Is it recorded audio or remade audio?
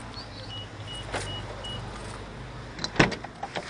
recorded